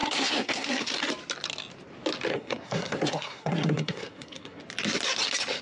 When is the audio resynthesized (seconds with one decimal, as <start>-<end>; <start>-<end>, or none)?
0.0-1.0; 2.3-4.6